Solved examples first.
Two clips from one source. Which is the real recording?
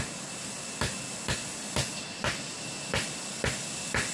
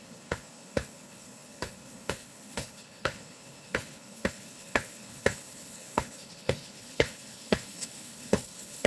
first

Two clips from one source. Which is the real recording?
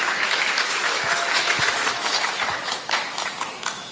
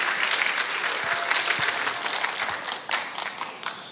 second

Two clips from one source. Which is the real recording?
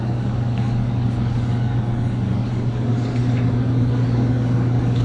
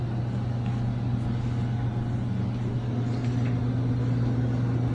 second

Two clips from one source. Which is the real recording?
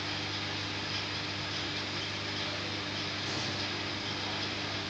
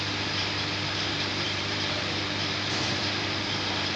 first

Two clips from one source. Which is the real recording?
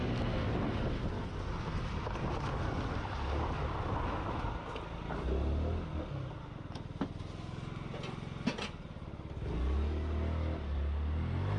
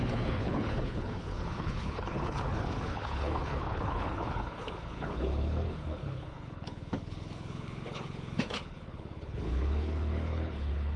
first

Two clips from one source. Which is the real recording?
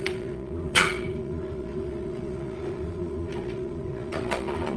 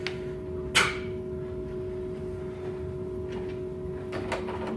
second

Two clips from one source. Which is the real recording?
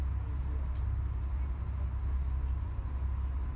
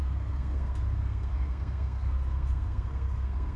first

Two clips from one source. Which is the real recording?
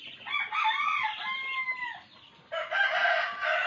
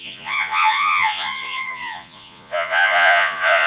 first